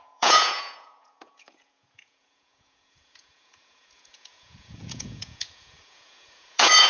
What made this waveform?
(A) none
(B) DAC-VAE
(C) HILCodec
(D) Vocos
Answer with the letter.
D